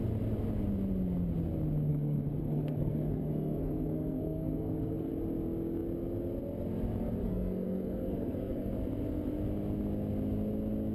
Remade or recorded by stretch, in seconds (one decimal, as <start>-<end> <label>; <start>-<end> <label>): 0.0-1.9 recorded; 1.9-5.1 remade; 5.1-7.2 recorded; 7.2-8.7 remade; 8.7-10.9 recorded